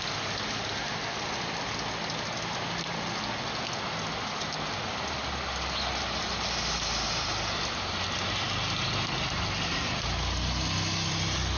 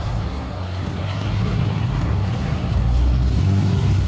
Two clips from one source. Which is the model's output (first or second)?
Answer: second